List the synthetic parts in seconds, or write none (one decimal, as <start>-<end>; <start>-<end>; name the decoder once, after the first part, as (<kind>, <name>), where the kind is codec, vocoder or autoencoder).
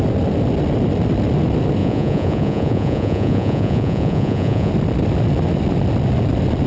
1.8-4.7 (vocoder, Vocos)